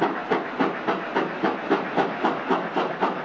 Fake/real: real